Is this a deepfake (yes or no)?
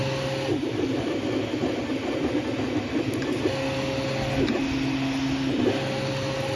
no